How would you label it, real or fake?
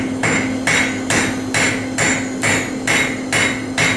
real